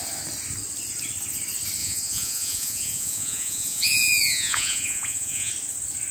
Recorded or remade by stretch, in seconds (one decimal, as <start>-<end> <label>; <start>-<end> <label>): 0.0-1.8 recorded; 1.8-5.5 remade; 5.5-6.1 recorded